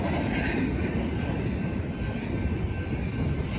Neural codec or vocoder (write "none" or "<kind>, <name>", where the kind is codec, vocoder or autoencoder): none